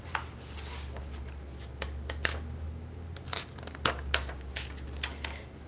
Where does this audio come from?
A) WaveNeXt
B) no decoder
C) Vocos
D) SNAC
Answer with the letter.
B